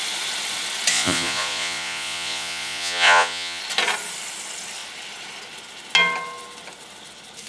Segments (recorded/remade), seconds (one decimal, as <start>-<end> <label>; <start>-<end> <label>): 0.0-0.9 recorded; 0.9-3.6 remade; 3.6-7.5 recorded